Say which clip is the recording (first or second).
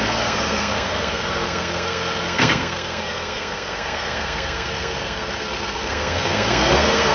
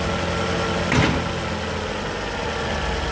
second